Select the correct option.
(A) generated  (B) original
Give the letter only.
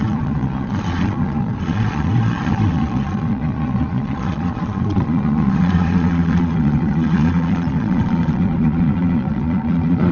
A